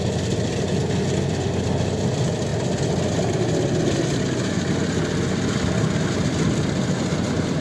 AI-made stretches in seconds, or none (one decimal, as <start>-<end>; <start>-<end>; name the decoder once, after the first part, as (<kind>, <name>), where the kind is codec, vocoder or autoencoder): none